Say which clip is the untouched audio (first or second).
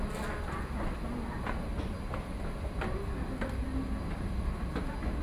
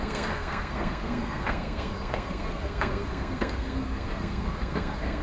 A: first